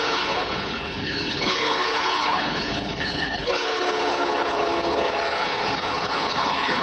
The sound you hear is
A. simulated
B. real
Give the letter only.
A